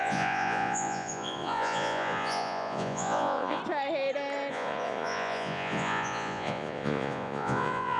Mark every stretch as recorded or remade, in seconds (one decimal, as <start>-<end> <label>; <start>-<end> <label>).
0.0-3.6 remade; 3.6-4.5 recorded; 4.5-8.0 remade

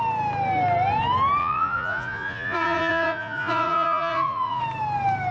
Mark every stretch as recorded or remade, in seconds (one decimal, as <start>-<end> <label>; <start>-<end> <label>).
0.0-1.4 recorded; 1.4-4.6 remade; 4.6-5.3 recorded

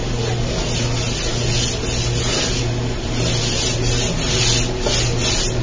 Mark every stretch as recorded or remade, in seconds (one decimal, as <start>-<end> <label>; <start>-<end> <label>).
0.0-5.6 recorded

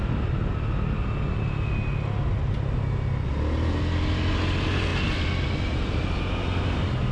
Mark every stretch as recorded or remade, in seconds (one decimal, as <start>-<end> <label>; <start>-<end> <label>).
0.0-7.1 recorded